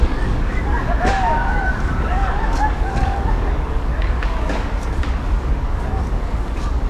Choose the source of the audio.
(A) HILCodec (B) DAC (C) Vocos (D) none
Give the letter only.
B